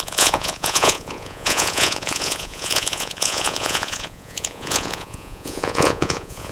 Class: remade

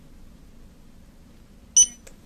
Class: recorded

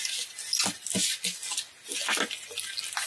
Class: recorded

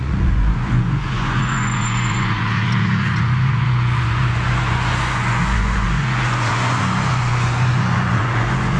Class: remade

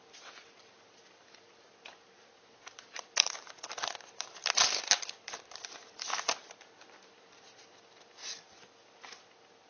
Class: recorded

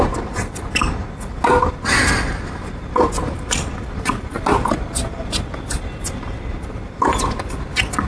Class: recorded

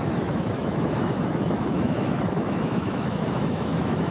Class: remade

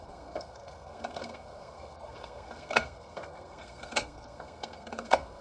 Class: remade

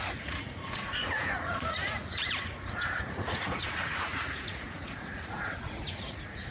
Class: remade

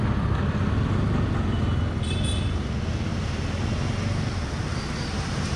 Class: recorded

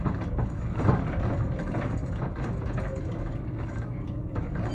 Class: remade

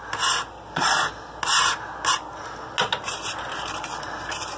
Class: recorded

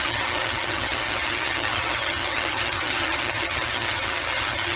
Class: remade